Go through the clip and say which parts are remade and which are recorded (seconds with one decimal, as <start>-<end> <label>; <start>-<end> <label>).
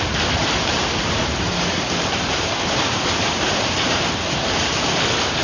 0.0-0.4 recorded; 0.4-1.5 remade; 1.5-5.4 recorded